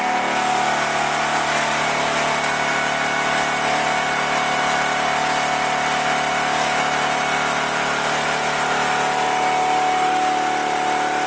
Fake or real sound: real